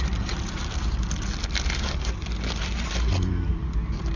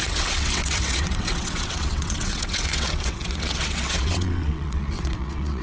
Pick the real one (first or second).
first